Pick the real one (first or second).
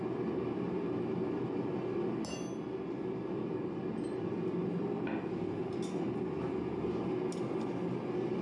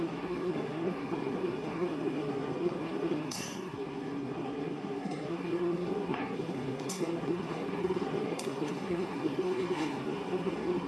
first